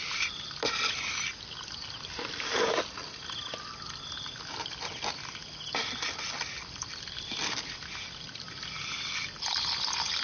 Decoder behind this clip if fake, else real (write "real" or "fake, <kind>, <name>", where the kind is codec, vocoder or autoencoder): real